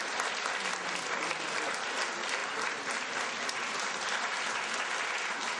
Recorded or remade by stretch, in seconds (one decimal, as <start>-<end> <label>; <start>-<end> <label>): 0.0-5.6 recorded

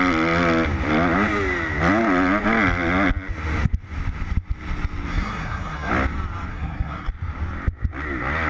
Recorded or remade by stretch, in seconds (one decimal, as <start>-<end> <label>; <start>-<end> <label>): 0.0-5.1 recorded; 5.1-5.9 remade; 5.9-6.5 recorded; 6.5-7.1 remade; 7.1-8.5 recorded

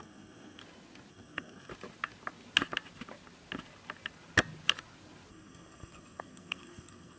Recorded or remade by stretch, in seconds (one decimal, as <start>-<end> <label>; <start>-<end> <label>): 0.0-0.6 remade; 0.6-1.1 recorded; 1.1-1.7 remade; 1.7-5.3 recorded; 5.3-7.2 remade

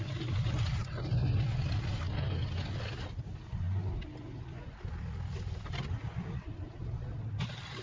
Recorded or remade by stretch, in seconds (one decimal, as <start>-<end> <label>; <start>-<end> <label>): 0.0-7.8 recorded

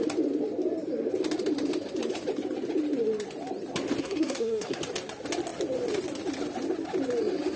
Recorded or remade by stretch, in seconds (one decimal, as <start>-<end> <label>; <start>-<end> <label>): 0.0-4.0 recorded; 4.0-4.8 remade; 4.8-7.6 recorded

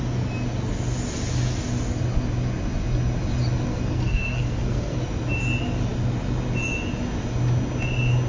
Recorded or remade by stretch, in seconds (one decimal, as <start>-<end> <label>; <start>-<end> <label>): 0.0-3.7 recorded; 3.7-5.0 remade; 5.0-8.3 recorded

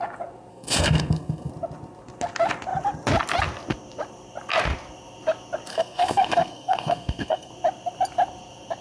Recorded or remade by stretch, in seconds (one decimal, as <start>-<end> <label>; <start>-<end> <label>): 0.0-0.5 recorded; 0.5-1.5 remade; 1.5-5.7 recorded; 5.7-7.5 remade; 7.5-8.8 recorded